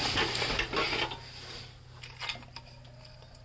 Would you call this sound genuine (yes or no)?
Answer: yes